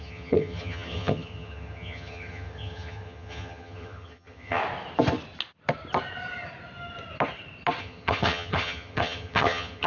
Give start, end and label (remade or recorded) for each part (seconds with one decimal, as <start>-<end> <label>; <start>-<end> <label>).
0.0-4.6 remade; 4.6-7.8 recorded; 7.8-9.9 remade